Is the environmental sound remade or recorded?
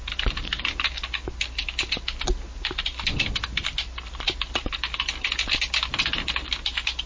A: recorded